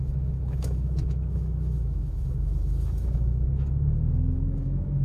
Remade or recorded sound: remade